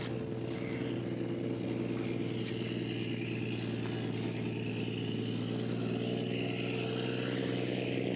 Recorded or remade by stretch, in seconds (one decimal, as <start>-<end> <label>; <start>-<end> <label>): 0.0-7.4 recorded; 7.4-8.2 remade